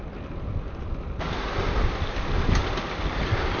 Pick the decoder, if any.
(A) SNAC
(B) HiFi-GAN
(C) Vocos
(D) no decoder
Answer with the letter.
D